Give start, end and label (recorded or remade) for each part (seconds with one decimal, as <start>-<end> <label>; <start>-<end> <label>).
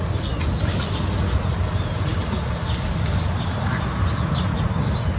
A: 0.0-5.2 recorded